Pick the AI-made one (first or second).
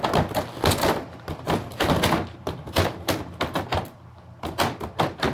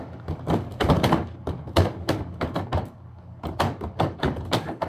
second